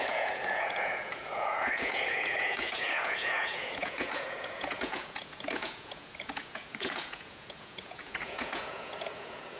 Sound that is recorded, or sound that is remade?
remade